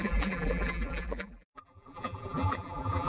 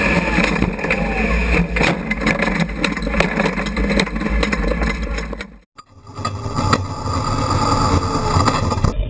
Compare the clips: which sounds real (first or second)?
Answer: second